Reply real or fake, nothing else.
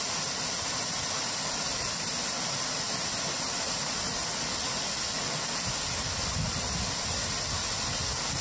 fake